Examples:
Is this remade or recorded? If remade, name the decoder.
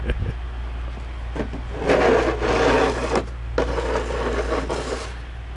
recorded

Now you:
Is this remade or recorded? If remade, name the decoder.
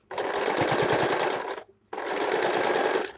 recorded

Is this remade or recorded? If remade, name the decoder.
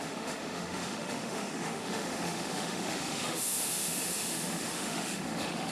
remade, autoencoder, DAC-VAE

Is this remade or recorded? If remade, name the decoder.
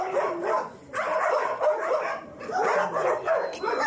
recorded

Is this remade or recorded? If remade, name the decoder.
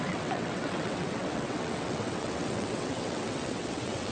remade, vocoder, WaveNeXt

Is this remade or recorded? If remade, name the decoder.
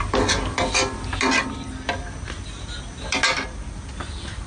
recorded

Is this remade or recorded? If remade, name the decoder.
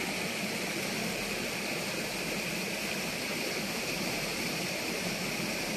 recorded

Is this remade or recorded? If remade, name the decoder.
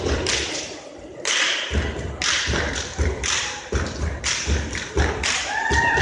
remade, vocoder, BigVGAN v2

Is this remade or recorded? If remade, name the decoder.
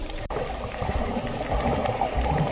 recorded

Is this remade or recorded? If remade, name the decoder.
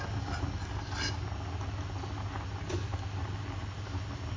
recorded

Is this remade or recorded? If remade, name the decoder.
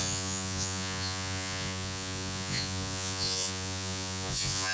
remade, vocoder, Vocos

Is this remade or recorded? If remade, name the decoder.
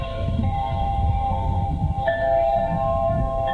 remade, codec, SNAC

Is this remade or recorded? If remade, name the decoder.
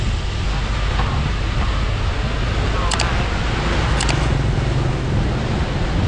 recorded